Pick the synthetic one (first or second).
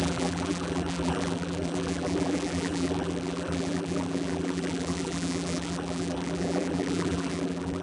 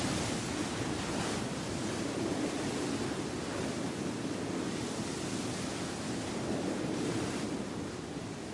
first